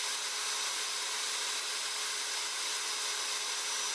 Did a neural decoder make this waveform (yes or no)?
no